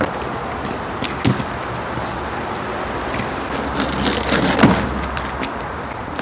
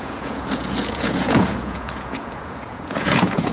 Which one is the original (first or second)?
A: first